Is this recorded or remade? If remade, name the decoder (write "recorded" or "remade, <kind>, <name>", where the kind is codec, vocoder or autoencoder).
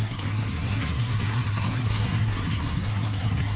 remade, codec, SNAC